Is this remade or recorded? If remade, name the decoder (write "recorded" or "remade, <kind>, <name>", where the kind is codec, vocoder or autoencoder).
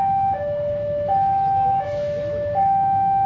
remade, autoencoder, DAC-VAE